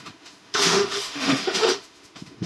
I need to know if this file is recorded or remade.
remade